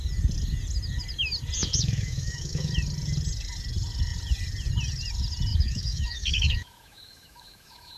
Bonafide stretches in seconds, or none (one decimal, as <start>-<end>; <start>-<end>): 0.0-1.6; 2.7-5.5